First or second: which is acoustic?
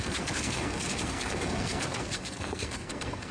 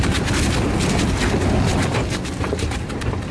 second